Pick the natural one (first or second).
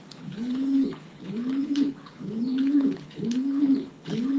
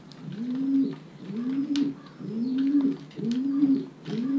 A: second